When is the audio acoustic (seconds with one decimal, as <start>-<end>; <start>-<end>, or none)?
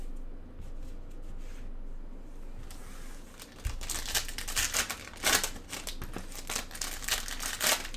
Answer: 0.0-8.0